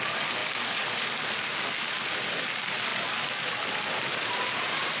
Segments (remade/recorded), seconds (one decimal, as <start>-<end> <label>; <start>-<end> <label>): 0.0-4.1 recorded; 4.1-5.0 remade